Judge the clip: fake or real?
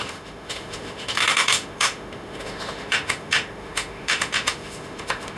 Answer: fake